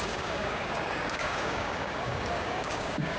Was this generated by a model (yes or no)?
yes